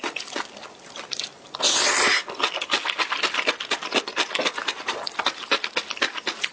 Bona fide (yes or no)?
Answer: yes